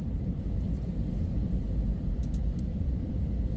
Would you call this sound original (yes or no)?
no